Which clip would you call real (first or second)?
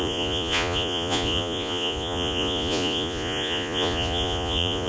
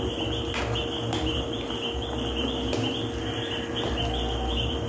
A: second